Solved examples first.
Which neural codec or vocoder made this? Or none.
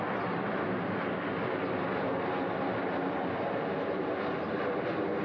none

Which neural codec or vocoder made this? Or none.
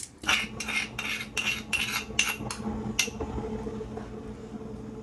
none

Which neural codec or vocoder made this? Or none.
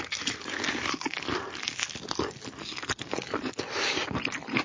none